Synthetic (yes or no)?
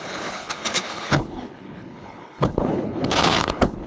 yes